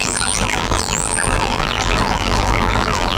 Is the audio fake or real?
fake